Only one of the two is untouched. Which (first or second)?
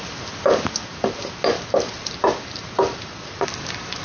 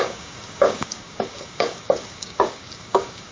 first